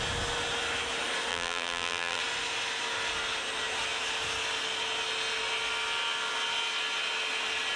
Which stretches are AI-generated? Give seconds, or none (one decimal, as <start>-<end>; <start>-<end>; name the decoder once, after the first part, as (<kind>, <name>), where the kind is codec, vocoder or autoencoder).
1.3-2.2 (vocoder, BigVGAN v2)